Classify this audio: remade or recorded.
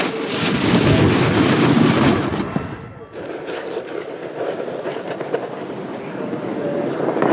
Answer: recorded